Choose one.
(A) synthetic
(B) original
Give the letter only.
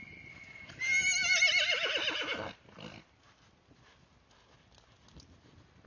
B